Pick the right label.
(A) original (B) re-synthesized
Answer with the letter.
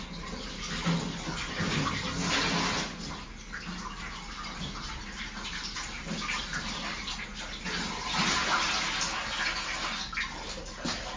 A